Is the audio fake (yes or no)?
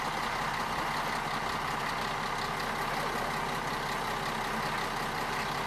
no